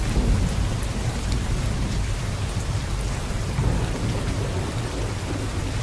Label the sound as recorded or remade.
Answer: recorded